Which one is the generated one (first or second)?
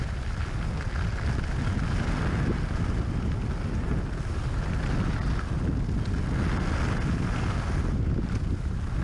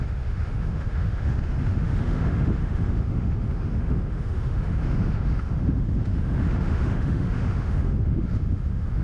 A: second